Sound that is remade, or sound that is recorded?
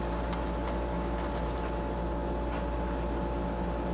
recorded